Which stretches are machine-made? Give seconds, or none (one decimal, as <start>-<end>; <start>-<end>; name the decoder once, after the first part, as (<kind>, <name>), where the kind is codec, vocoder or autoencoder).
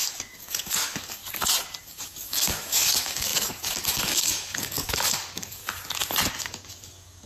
0.0-1.2 (codec, DAC); 1.8-5.6; 6.3-7.3